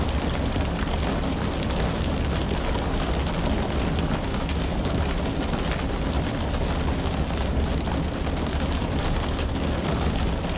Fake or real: real